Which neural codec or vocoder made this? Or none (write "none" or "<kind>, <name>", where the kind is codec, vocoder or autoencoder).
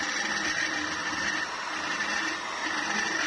none